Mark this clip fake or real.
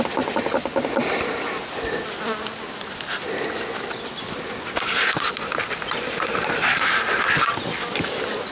real